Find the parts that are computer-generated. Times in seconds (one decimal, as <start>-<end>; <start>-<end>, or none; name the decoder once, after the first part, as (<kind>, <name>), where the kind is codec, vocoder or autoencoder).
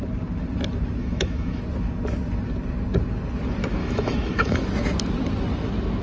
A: 1.0-1.6 (autoencoder, DAC-VAE); 3.8-4.6